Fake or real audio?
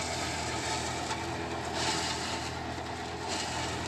real